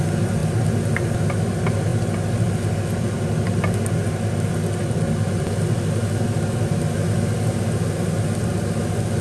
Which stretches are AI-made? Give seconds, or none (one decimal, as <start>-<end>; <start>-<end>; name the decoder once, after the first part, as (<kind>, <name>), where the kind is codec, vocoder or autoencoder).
none